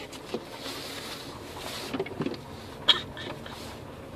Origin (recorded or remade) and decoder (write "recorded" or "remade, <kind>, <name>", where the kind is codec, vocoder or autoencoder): recorded